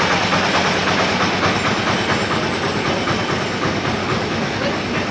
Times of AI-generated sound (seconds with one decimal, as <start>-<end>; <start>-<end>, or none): 4.0-4.6